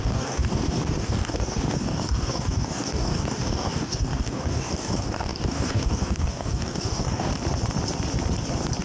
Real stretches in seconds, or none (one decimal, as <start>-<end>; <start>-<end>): 7.3-8.8